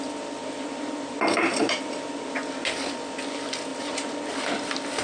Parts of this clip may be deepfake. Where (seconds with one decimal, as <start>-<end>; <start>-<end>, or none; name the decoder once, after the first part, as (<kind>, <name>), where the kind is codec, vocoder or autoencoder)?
0.4-2.3 (vocoder, BigVGAN v2); 3.7-4.3